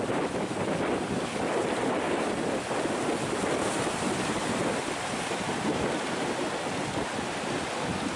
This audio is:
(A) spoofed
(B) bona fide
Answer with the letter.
B